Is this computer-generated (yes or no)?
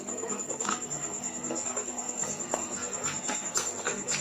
yes